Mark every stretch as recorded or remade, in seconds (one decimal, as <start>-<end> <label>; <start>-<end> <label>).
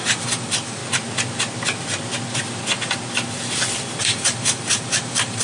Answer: 0.0-0.8 remade; 0.8-4.0 recorded; 4.0-5.4 remade